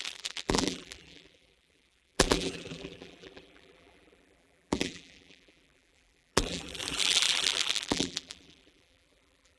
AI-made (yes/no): yes